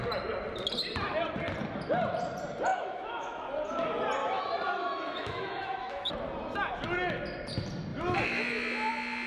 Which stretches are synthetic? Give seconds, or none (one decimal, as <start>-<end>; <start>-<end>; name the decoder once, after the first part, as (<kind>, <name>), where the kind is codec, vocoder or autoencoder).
2.7-3.4 (autoencoder, DAC-VAE); 4.2-6.1